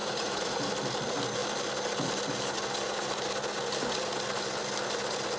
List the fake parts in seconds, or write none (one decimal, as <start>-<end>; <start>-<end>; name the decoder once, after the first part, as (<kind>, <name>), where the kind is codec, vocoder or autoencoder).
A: 0.0-0.6 (vocoder, Vocos)